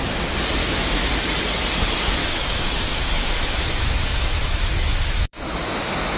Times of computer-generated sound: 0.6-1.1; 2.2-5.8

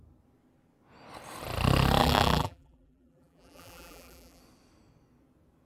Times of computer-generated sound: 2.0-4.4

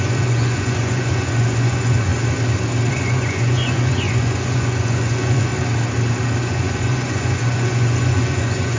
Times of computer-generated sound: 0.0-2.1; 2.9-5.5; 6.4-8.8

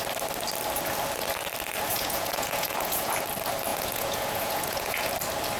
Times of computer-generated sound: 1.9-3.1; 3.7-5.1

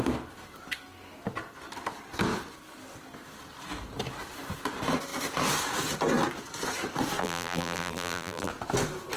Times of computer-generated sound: 7.2-8.5

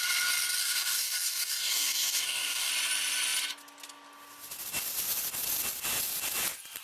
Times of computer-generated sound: 0.6-2.7

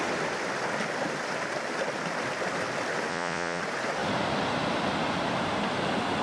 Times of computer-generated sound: 3.1-3.6